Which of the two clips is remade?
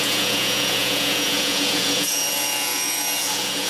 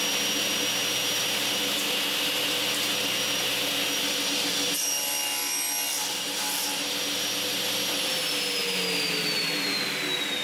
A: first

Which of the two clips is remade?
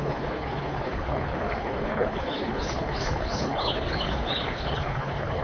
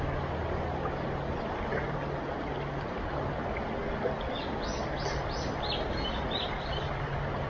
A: first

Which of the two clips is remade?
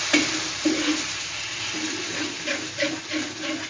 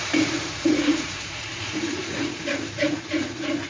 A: second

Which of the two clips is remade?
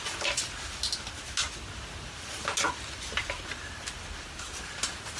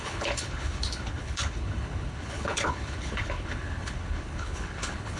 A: second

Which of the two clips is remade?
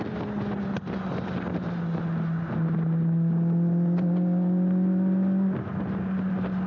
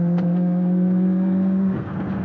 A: second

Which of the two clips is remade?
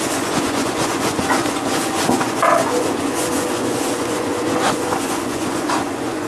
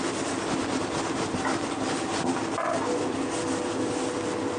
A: first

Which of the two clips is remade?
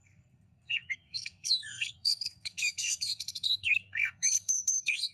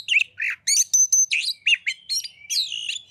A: first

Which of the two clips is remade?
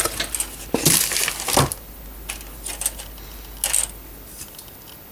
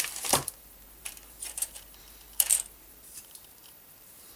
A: second